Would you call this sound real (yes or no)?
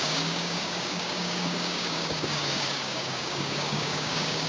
no